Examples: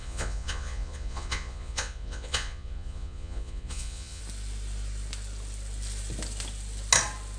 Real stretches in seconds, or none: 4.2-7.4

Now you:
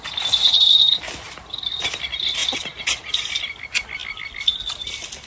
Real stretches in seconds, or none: 0.0-5.3

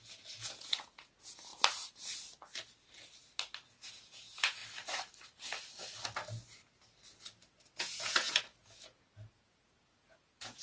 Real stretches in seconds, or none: 1.5-3.9; 4.6-7.8

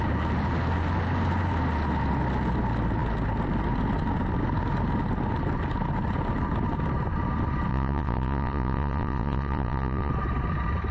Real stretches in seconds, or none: 0.0-7.7; 10.1-10.9

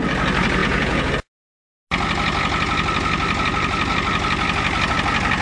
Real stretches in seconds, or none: 0.0-0.6; 1.1-5.4

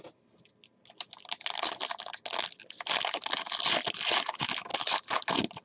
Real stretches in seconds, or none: 0.0-5.6